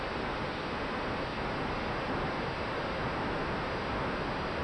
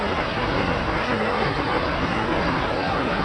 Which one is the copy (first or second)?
second